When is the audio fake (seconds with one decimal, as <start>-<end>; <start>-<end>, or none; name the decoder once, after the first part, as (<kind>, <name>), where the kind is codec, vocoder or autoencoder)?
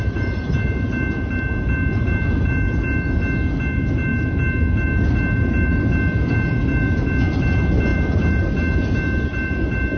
none